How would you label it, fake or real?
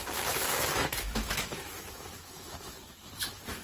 fake